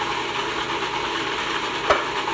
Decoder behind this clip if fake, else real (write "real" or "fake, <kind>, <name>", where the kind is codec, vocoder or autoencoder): real